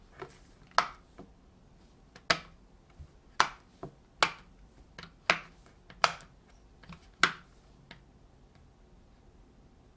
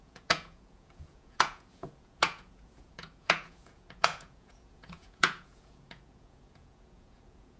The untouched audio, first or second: first